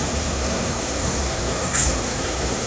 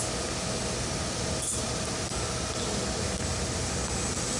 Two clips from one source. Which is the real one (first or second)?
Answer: second